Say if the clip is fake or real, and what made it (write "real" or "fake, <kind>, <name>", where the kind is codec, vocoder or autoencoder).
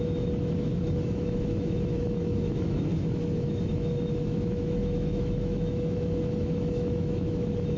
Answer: fake, autoencoder, DAC-VAE